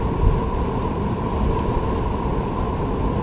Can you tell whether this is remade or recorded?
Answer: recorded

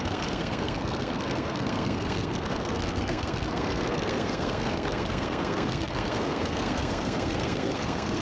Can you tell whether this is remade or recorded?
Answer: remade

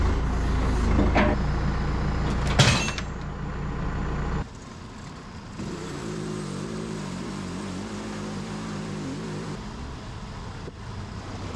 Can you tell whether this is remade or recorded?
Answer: recorded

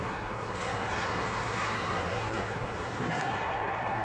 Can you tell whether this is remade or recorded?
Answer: remade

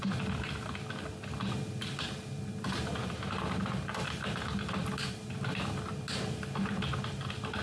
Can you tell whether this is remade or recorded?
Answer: recorded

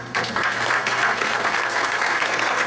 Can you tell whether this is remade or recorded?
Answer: remade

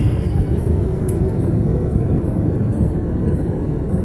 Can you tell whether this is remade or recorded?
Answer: remade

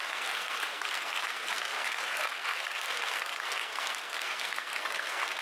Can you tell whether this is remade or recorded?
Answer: remade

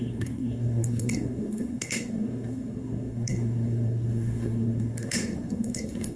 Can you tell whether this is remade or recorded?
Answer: remade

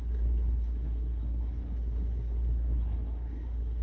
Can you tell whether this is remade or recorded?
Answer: remade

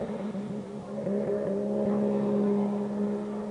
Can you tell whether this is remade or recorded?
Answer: recorded